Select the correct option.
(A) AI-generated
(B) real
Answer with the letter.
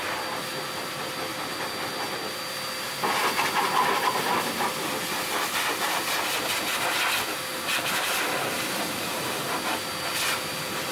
B